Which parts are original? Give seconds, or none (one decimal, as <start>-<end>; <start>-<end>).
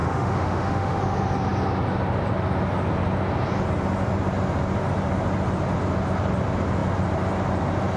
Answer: 1.0-8.0